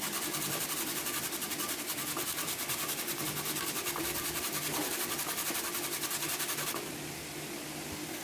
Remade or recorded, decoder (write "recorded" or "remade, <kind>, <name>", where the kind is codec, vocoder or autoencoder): recorded